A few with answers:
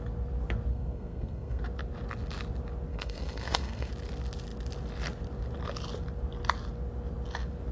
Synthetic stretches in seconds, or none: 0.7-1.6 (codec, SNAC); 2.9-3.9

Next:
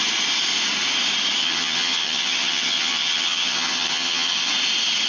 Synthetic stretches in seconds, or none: 1.4-4.5 (vocoder, HiFi-GAN)

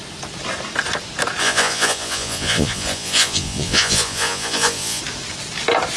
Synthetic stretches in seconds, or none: 1.4-5.0 (vocoder, Vocos)